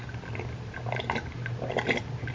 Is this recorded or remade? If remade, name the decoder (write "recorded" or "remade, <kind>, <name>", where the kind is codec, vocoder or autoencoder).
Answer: recorded